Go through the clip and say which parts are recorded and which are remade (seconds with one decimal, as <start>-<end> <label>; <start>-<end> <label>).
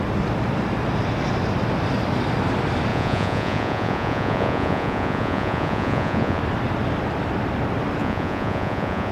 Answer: 0.0-2.9 recorded; 2.9-6.4 remade; 6.4-8.0 recorded; 8.0-9.1 remade